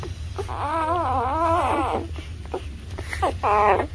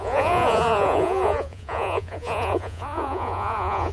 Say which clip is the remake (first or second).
second